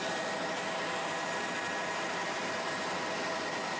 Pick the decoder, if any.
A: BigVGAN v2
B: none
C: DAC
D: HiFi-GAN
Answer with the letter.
B